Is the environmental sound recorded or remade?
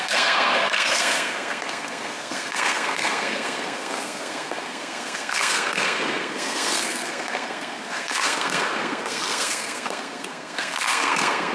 remade